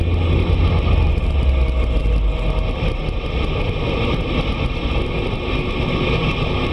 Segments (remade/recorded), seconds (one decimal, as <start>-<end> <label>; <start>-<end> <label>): 0.0-6.7 recorded